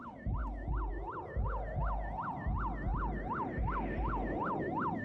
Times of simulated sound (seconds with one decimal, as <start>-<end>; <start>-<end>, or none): 2.9-4.6

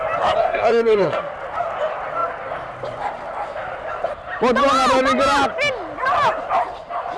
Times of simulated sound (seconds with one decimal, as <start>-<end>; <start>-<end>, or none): 0.4-1.2

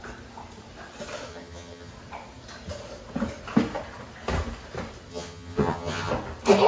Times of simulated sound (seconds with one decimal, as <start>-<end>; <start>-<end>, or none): 1.3-1.9; 5.1-6.1

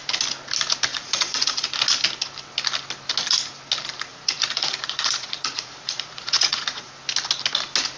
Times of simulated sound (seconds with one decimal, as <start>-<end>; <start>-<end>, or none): 0.9-1.8; 4.1-6.9